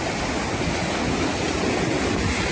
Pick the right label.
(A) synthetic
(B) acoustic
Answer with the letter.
B